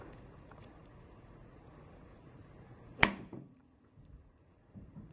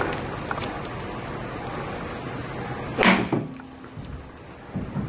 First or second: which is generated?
first